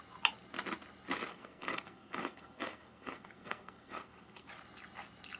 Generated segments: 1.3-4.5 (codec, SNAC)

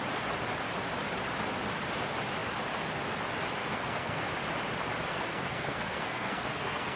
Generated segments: 3.6-4.3 (codec, SNAC); 5.1-7.0

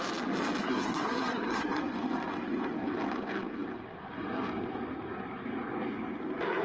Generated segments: 0.6-1.8 (codec, SNAC)